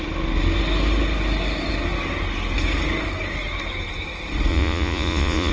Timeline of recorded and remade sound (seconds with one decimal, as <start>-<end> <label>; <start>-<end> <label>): 0.0-4.5 recorded; 4.5-5.5 remade